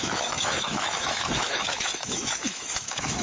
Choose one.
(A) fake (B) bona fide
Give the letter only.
A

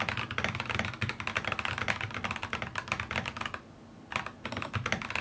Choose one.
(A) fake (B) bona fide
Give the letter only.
B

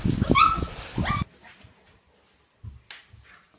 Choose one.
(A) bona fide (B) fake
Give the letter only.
A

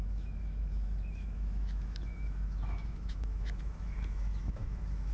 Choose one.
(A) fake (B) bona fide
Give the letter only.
A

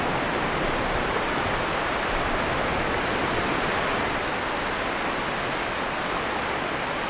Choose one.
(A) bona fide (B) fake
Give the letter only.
A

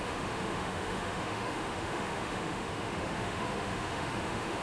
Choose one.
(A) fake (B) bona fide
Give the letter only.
A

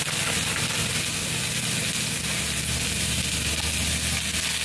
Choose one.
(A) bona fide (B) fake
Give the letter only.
A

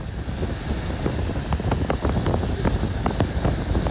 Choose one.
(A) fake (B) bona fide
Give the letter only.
B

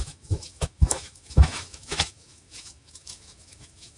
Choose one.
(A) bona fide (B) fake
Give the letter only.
B